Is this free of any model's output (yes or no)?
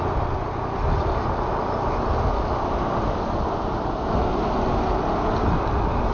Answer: yes